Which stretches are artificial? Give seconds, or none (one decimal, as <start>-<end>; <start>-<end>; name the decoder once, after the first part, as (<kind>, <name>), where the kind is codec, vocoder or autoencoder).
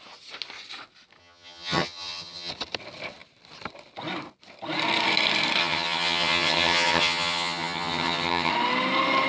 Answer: 1.2-2.5 (vocoder, HiFi-GAN); 5.6-8.5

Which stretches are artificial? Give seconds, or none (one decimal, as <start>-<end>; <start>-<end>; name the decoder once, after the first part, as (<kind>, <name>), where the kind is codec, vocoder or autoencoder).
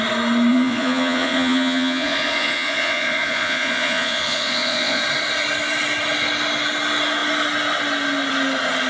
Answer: 0.5-5.0 (vocoder, Vocos)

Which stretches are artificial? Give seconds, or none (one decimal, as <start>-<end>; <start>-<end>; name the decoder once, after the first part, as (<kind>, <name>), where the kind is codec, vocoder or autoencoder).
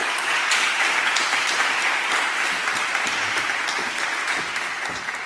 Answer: 0.0-0.9 (codec, DAC)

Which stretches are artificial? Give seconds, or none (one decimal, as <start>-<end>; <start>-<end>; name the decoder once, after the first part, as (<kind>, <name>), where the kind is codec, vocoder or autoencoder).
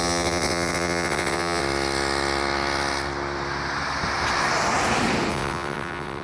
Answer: 0.0-1.6 (vocoder, WaveNeXt); 5.3-6.2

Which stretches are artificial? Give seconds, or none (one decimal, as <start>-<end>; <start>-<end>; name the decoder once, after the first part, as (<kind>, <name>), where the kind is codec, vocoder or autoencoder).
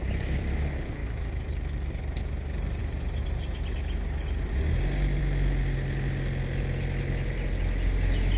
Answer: none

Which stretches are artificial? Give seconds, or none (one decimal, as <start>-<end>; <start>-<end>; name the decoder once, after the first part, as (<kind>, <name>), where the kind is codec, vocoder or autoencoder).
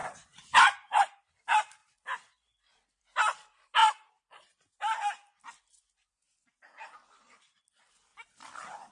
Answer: none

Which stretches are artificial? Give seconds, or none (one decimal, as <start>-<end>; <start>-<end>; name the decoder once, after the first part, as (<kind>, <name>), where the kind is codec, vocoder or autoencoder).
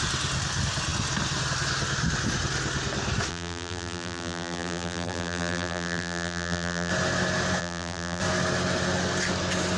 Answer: 3.3-6.9 (vocoder, BigVGAN v2); 7.6-8.2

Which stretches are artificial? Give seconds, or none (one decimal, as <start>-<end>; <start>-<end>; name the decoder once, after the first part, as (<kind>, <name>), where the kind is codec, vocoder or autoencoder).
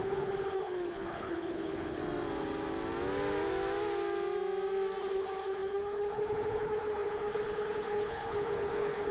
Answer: 0.0-2.0 (codec, HILCodec); 5.0-9.1